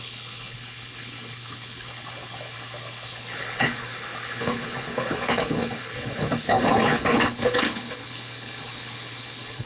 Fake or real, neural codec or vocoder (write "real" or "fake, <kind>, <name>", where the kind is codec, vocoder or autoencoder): fake, codec, HILCodec